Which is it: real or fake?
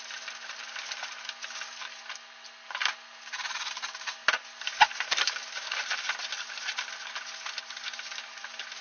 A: real